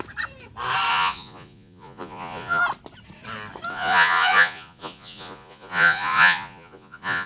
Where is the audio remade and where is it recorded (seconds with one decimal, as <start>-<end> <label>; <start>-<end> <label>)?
0.0-0.9 recorded; 0.9-2.6 remade; 2.6-3.7 recorded; 3.7-7.3 remade